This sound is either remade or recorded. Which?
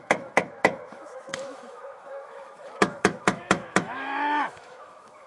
remade